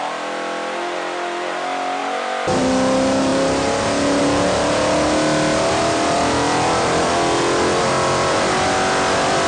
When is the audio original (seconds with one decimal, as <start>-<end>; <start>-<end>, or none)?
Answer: none